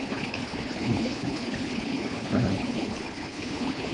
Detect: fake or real fake